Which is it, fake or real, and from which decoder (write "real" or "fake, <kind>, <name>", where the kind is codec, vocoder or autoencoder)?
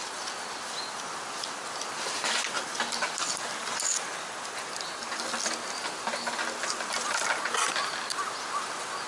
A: real